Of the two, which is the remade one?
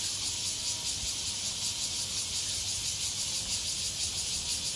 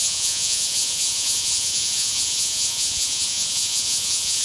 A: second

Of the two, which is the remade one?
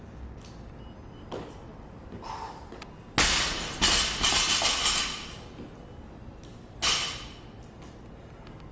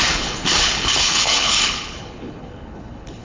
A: second